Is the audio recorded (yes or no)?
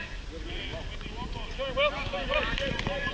yes